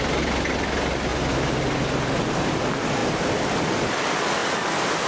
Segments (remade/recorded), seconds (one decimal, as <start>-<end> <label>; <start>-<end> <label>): 0.0-5.1 recorded